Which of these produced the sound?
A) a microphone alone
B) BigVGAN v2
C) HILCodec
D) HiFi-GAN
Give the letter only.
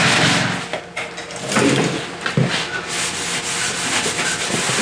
A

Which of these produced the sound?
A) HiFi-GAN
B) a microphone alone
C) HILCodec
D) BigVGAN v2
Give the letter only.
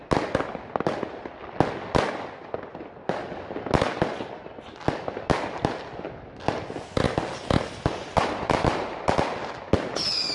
B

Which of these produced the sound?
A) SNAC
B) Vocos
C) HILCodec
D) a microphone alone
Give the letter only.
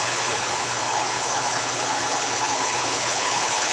C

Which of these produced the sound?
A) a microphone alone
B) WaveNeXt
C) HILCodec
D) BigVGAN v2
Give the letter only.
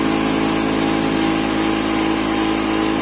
A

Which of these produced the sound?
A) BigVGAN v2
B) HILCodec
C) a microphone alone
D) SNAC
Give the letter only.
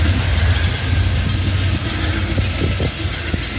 C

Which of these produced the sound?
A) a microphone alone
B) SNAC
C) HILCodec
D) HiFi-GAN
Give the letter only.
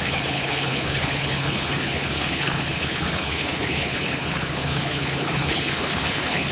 C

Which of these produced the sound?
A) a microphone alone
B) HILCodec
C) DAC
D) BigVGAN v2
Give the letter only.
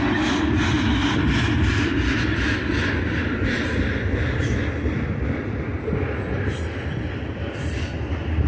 A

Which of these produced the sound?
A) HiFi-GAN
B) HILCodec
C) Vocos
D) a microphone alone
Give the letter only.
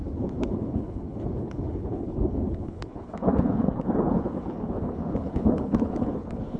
B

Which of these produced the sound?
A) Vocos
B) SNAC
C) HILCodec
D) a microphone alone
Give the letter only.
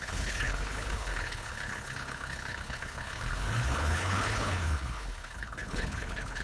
C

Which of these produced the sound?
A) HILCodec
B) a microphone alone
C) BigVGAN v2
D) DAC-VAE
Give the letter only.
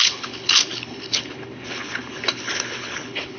A